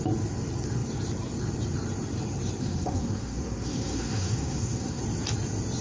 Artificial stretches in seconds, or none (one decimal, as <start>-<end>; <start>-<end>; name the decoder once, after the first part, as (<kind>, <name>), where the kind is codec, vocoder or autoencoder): 2.6-5.0 (codec, SNAC)